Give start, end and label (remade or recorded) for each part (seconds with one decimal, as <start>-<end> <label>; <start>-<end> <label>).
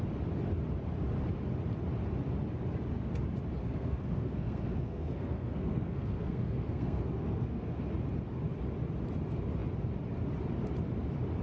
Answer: 0.0-3.6 recorded; 3.6-7.8 remade; 7.8-11.4 recorded